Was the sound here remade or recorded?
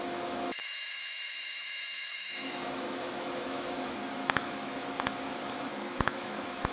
remade